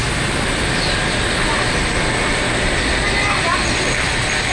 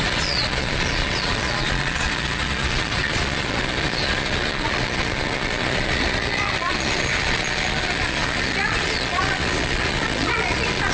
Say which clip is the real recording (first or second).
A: first